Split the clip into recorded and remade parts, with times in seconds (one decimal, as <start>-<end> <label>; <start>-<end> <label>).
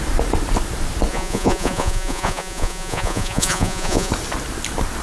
0.0-1.1 recorded; 1.1-4.1 remade; 4.1-5.0 recorded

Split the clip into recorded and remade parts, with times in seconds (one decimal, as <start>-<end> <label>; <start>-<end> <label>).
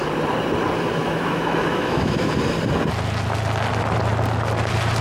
0.0-1.0 recorded; 1.0-2.3 remade; 2.3-5.0 recorded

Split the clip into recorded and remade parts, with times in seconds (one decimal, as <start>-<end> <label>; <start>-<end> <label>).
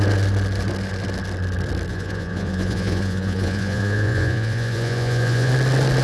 0.0-1.9 recorded; 1.9-5.5 remade; 5.5-6.0 recorded